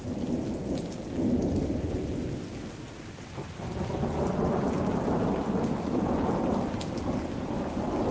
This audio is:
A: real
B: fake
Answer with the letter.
A